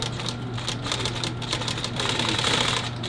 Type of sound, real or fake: real